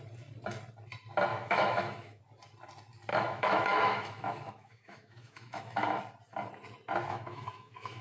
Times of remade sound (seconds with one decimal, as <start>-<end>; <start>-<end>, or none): 1.3-2.2; 3.1-6.0; 7.1-8.0